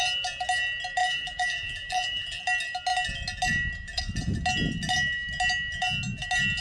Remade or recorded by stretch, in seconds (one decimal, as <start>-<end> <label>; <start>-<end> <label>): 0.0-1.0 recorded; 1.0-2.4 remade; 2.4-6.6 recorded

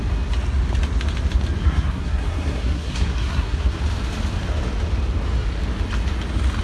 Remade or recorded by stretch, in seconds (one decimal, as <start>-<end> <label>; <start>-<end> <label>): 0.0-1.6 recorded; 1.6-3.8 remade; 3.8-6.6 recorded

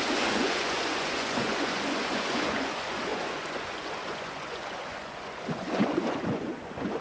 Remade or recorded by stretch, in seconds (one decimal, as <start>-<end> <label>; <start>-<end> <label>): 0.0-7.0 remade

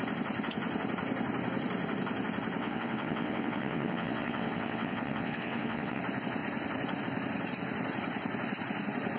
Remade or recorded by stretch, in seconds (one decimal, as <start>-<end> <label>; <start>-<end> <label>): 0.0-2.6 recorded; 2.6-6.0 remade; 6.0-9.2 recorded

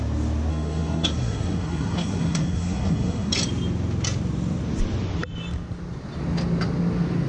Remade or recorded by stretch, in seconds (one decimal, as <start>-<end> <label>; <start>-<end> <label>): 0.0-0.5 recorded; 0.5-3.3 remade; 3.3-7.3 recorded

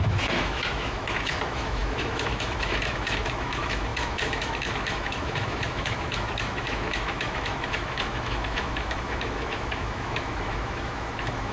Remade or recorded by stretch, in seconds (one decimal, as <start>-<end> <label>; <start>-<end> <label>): 0.0-11.5 remade

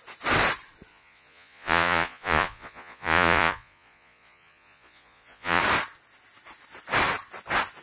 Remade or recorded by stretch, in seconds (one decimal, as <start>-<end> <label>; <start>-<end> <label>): 0.0-0.9 recorded; 0.9-5.6 remade; 5.6-7.8 recorded

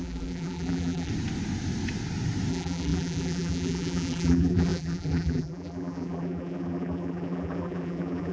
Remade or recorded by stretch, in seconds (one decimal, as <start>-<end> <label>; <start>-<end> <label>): 0.0-1.1 remade; 1.1-2.5 recorded; 2.5-8.3 remade